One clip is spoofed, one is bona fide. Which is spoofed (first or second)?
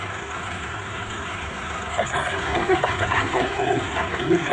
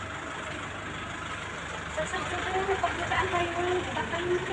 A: first